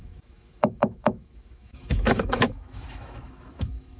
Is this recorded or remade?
remade